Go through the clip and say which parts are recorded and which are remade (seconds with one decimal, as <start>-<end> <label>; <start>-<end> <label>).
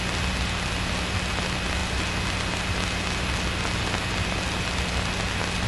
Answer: 0.0-5.7 recorded